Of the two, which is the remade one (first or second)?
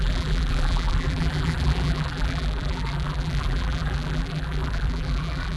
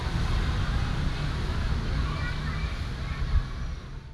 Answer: first